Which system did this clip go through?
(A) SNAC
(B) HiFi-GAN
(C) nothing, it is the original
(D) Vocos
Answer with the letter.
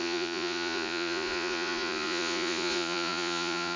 D